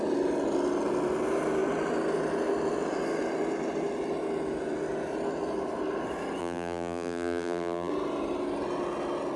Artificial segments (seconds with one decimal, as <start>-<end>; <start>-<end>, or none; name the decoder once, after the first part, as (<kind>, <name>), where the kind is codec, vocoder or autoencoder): 6.4-7.9 (vocoder, BigVGAN v2)